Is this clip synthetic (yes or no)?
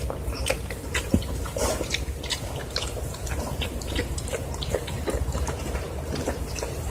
yes